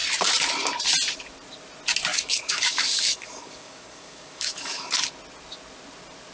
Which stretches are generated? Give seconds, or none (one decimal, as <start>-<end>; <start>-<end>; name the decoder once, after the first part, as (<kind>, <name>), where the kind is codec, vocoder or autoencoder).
2.1-4.9 (codec, DAC)